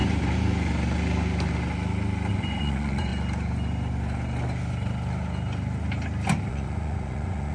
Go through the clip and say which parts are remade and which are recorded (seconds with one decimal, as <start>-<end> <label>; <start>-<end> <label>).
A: 0.0-2.3 recorded; 2.3-3.1 remade; 3.1-6.5 recorded; 6.5-7.5 remade